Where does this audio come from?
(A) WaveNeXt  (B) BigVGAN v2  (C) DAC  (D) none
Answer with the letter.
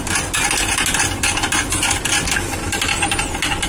D